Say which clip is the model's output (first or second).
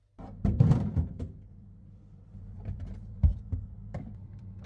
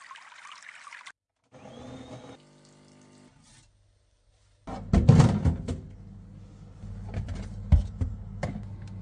first